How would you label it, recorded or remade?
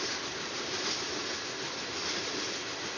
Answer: recorded